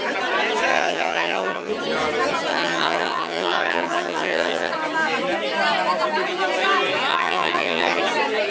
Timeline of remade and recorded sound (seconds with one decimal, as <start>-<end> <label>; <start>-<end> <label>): 0.0-0.7 recorded; 0.7-1.7 remade; 1.7-2.5 recorded; 2.5-4.7 remade; 4.7-7.1 recorded; 7.1-8.0 remade; 8.0-8.5 recorded